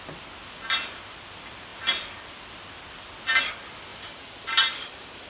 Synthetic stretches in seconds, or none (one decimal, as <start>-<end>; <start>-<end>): 3.9-5.3